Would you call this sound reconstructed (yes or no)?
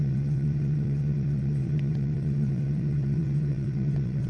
yes